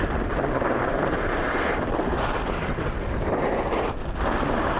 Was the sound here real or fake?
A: real